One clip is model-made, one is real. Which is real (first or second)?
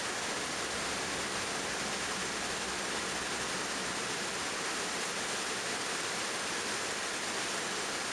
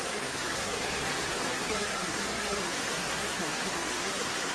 first